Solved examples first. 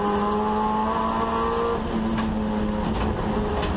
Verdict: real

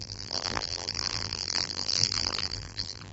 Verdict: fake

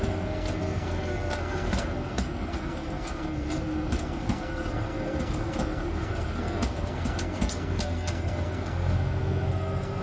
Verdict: fake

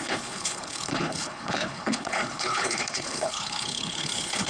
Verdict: fake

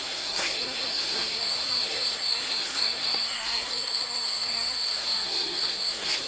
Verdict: fake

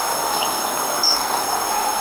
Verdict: fake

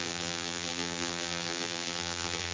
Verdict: fake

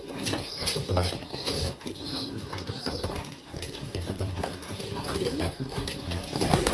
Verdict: fake